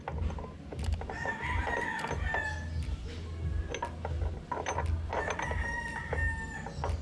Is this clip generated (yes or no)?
no